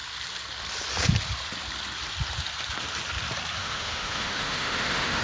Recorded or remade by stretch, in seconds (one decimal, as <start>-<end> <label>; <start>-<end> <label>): 0.0-3.6 recorded; 3.6-5.2 remade